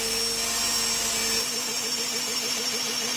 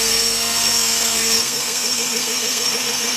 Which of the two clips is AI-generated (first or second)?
second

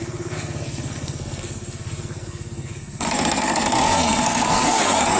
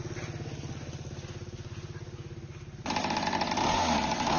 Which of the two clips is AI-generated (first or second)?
first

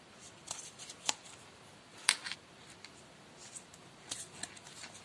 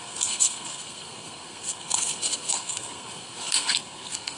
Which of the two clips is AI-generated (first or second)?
second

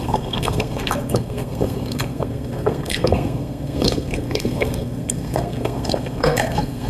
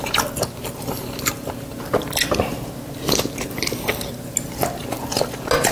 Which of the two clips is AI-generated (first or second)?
first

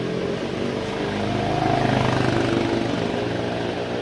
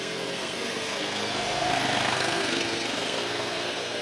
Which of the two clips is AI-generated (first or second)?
second